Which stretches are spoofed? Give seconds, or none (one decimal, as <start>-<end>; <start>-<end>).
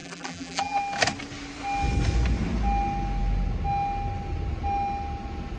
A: 0.0-0.8